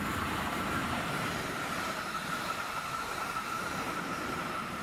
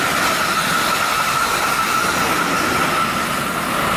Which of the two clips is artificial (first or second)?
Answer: first